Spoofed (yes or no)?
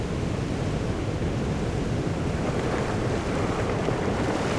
yes